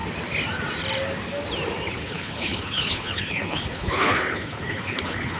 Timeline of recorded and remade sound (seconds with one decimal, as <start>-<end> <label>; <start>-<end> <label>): 0.0-1.9 recorded; 1.9-5.4 remade